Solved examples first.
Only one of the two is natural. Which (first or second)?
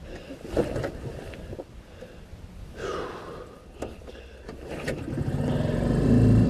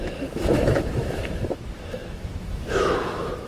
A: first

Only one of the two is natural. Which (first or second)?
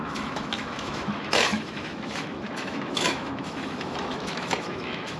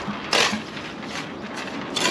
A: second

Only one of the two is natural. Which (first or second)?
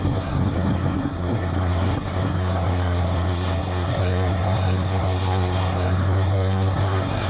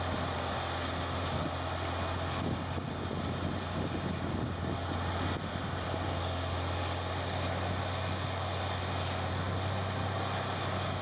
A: second